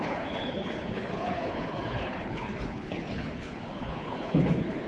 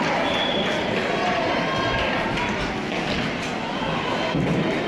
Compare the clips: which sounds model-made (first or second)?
first